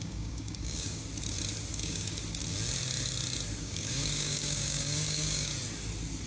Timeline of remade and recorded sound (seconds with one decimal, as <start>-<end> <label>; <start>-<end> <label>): 0.0-1.0 remade; 1.0-1.7 recorded; 1.7-2.4 remade; 2.4-3.6 recorded; 3.6-5.5 remade; 5.5-6.3 recorded